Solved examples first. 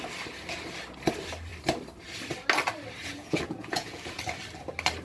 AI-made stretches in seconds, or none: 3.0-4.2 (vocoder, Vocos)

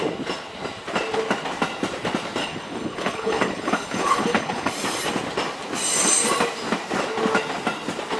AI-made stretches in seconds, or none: 2.4-4.7 (codec, HILCodec)

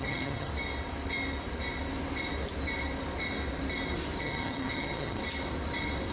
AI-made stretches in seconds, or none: 0.0-0.5 (vocoder, HiFi-GAN); 4.2-5.2

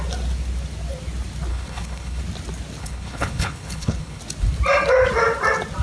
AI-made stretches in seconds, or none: 1.5-2.2 (codec, HILCodec); 2.8-4.2

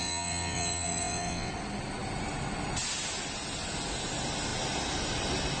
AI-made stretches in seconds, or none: 0.0-1.5 (vocoder, WaveNeXt)